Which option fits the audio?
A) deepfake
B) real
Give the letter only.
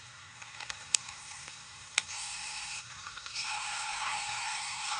A